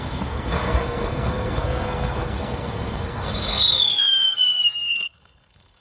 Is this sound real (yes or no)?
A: no